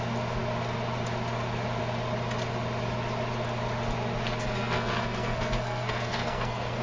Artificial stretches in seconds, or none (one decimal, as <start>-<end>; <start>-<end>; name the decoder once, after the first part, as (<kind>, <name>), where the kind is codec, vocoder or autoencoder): 4.4-6.8 (codec, SNAC)